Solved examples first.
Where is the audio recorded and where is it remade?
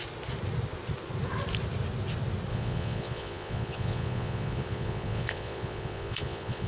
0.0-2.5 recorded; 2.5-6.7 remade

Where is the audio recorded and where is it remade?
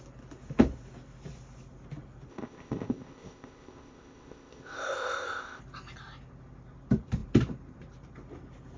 0.0-2.3 recorded; 2.3-5.6 remade; 5.6-8.8 recorded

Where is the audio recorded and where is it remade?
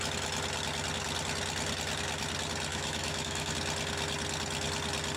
0.0-2.7 recorded; 2.7-3.5 remade; 3.5-5.2 recorded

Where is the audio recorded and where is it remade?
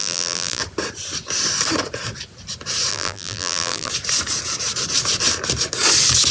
0.0-0.6 remade; 0.6-2.9 recorded; 2.9-3.9 remade; 3.9-6.3 recorded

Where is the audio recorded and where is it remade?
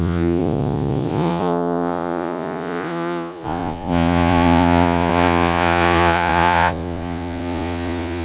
0.0-8.2 remade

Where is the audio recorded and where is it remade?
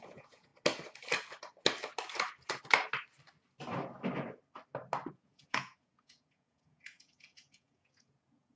0.0-0.5 remade; 0.5-5.1 recorded; 5.1-8.6 remade